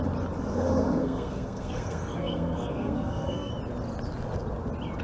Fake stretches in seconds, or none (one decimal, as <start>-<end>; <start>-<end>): 0.5-3.5